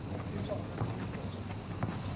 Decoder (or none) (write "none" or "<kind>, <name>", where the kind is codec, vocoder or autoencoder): none